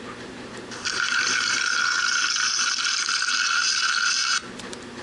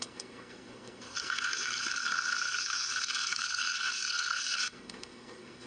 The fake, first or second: second